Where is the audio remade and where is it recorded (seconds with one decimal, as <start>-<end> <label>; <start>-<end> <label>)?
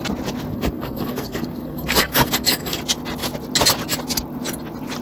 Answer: 0.0-0.5 recorded; 0.5-2.8 remade; 2.8-5.0 recorded